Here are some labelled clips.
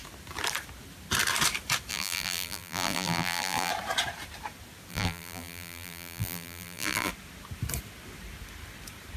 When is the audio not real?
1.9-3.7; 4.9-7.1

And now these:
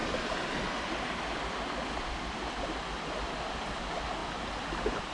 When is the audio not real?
3.1-4.2

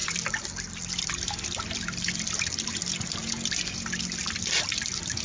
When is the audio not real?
0.0-2.7